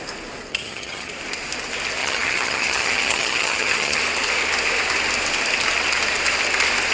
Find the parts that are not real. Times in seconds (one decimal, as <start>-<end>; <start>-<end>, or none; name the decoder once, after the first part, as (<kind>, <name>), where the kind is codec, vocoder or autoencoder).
0.5-1.1 (vocoder, HiFi-GAN); 2.0-4.0